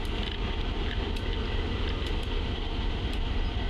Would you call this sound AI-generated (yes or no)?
no